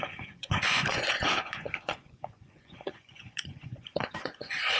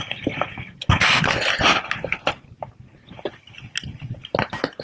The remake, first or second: first